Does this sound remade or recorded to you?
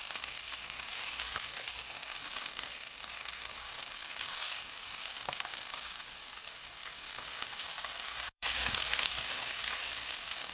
remade